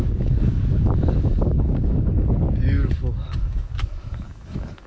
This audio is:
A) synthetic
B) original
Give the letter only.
A